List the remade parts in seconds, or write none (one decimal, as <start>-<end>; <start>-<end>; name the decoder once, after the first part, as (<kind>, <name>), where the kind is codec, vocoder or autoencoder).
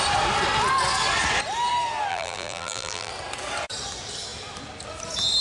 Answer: 2.1-3.1 (vocoder, BigVGAN v2)